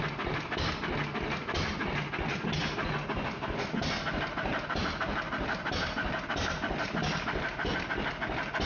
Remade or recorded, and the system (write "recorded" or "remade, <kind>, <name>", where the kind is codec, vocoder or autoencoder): recorded